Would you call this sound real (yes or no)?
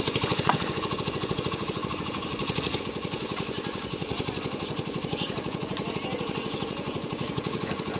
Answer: no